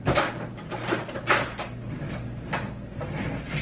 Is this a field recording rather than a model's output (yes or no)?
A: yes